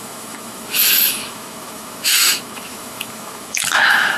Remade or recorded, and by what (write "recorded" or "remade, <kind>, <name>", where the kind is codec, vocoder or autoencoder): remade, autoencoder, DAC-VAE